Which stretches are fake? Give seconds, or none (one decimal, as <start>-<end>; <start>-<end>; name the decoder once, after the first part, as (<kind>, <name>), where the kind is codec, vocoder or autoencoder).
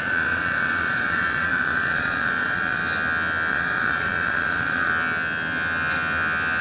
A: 0.0-2.8 (vocoder, Vocos); 3.5-4.9